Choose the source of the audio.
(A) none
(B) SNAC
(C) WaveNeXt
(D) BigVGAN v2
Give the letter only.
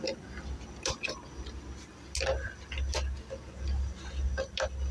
A